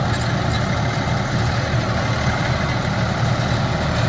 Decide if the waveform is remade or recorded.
recorded